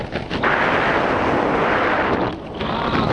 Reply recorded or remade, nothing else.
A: recorded